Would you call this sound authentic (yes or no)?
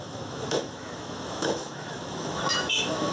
no